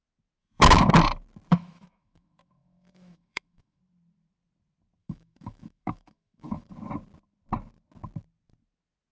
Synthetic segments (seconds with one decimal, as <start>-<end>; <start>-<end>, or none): 0.4-0.9; 1.5-3.8; 5.0-6.7